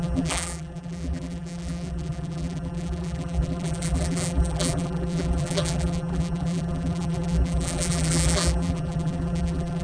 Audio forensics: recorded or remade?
remade